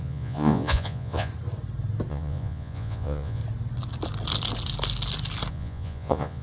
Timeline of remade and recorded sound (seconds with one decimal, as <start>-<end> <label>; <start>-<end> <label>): 0.0-1.3 remade; 1.3-2.1 recorded; 2.1-3.4 remade; 3.4-5.5 recorded; 5.5-6.4 remade